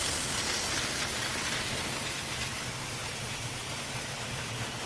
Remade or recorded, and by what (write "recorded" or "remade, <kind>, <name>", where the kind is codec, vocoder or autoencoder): recorded